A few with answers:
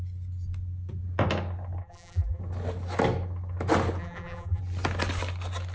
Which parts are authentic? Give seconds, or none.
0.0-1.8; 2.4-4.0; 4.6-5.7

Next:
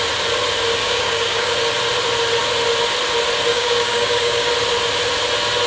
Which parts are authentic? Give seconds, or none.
0.0-0.8; 1.5-3.5; 4.5-5.7

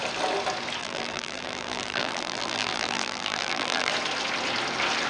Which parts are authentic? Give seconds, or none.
0.0-0.8; 3.9-5.1

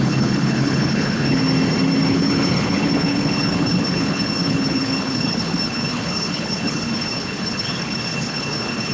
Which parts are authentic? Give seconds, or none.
1.4-2.1

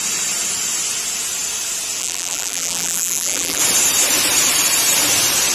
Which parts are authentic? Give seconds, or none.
0.0-2.0; 3.6-5.5

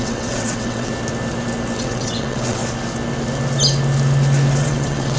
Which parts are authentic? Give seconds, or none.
0.9-1.8; 2.6-4.6